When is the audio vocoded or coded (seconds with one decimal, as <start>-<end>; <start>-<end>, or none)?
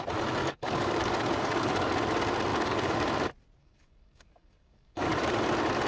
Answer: 0.4-1.9; 2.5-3.1; 3.6-5.4